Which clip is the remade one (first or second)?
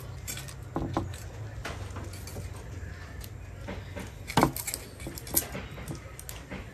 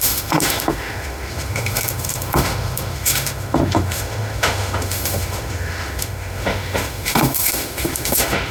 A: second